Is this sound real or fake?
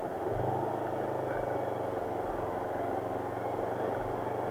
real